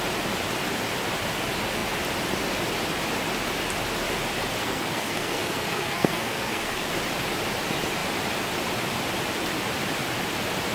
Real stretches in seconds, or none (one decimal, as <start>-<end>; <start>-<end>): 0.0-4.6; 6.9-10.7